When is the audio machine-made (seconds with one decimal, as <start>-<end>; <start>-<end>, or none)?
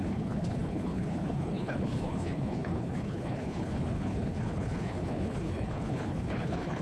0.0-6.8